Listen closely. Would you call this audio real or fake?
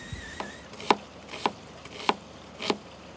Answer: real